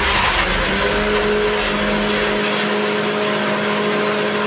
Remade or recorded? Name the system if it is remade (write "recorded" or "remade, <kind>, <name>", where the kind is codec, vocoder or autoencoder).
recorded